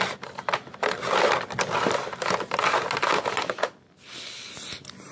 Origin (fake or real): real